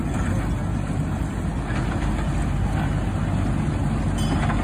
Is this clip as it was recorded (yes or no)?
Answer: yes